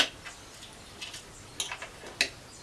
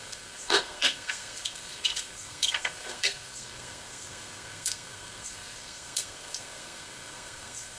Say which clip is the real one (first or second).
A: first